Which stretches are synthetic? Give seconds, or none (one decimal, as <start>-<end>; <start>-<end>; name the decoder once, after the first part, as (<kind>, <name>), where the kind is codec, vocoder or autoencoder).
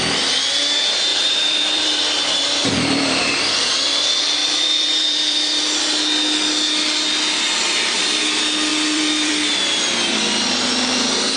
1.1-4.0 (vocoder, BigVGAN v2); 4.4-5.6; 8.7-9.3